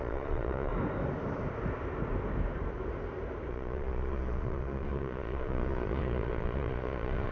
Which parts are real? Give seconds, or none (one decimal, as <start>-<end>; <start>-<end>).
0.7-3.5